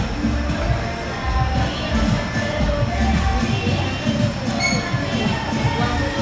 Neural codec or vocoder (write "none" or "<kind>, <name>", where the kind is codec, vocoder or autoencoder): none